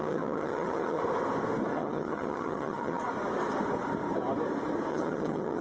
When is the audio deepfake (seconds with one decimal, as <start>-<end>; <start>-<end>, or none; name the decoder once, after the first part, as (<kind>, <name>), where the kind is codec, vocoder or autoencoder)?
0.0-1.0 (vocoder, HiFi-GAN); 1.7-3.0; 4.9-5.6